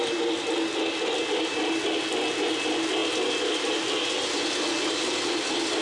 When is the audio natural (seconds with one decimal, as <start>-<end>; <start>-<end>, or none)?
0.0-5.8